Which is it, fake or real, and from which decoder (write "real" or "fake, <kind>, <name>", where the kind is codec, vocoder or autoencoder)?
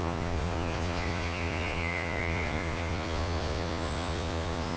fake, vocoder, Vocos